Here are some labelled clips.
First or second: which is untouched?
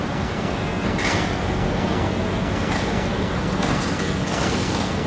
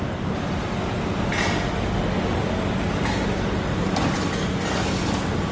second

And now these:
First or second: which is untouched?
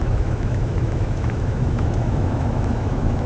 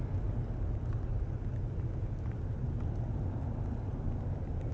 second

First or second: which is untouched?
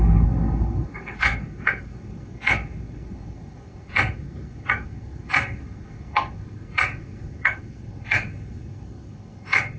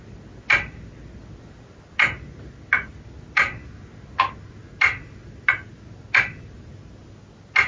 second